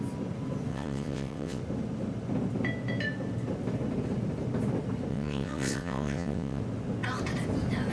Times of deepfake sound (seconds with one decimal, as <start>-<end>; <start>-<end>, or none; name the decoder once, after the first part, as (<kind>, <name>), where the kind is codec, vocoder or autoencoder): 0.7-1.6 (vocoder, WaveNeXt); 5.1-6.6